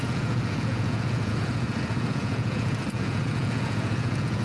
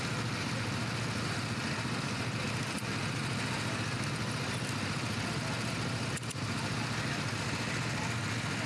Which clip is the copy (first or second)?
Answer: first